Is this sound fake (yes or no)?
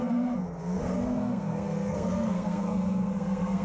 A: yes